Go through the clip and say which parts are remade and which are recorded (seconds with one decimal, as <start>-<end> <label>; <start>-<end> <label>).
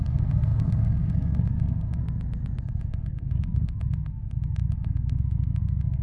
0.0-2.0 remade; 2.0-2.6 recorded; 2.6-6.0 remade